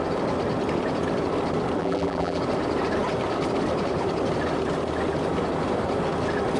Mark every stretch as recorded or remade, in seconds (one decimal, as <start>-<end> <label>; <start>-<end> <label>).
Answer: 0.0-1.8 recorded; 1.8-2.4 remade; 2.4-6.6 recorded